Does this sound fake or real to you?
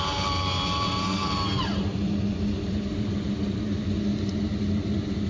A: real